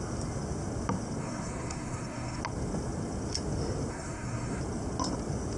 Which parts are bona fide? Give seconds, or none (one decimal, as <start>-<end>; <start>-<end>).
0.0-1.2; 2.4-3.9; 4.6-5.6